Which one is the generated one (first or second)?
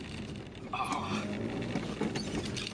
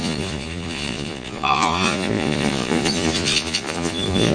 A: second